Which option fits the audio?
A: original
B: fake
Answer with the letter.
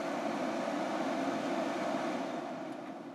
A